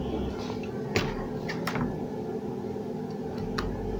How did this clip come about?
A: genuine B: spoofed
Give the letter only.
A